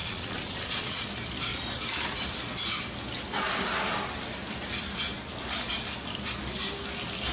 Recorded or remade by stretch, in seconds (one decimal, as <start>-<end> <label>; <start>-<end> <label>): 0.0-1.1 remade; 1.1-7.3 recorded

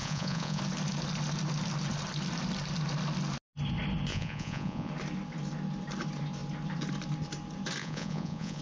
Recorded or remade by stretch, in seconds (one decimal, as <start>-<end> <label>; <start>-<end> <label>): 0.0-0.6 remade; 0.6-4.1 recorded; 4.1-4.9 remade; 4.9-7.8 recorded; 7.8-8.6 remade